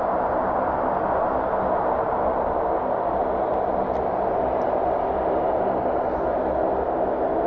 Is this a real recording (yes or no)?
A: yes